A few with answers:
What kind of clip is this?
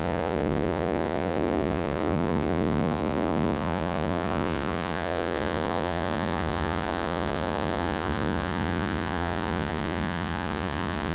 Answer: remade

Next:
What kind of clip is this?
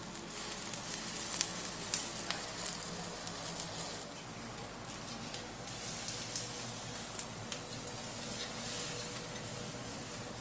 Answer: recorded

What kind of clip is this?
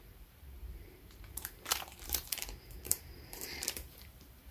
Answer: remade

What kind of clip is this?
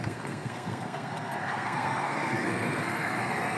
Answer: remade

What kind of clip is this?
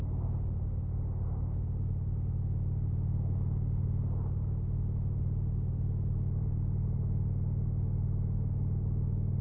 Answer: recorded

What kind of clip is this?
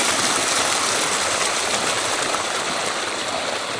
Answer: recorded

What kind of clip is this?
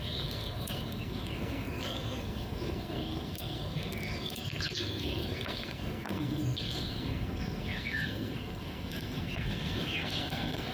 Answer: remade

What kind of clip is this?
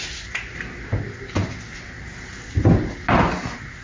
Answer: recorded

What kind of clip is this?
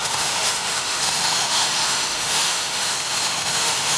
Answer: remade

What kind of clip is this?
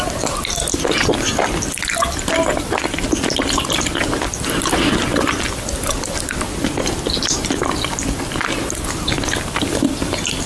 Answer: recorded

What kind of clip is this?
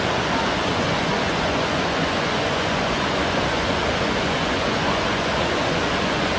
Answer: remade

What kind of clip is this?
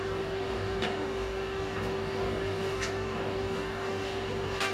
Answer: remade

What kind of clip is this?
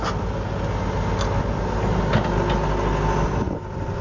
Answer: recorded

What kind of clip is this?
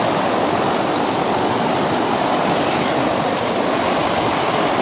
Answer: recorded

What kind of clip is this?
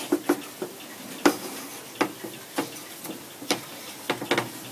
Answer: recorded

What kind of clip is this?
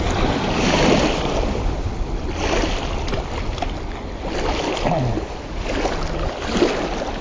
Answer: recorded